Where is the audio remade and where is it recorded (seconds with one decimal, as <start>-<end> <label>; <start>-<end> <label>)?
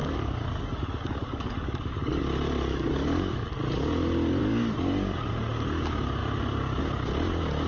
0.0-2.2 remade; 2.2-2.7 recorded; 2.7-3.5 remade; 3.5-4.4 recorded; 4.4-5.3 remade; 5.3-7.7 recorded